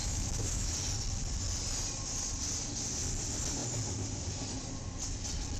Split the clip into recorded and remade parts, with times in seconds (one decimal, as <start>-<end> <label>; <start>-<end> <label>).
0.0-0.7 remade; 0.7-5.6 recorded